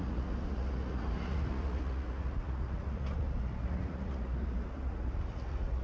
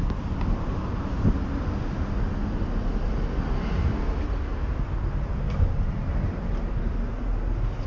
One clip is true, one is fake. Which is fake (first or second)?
first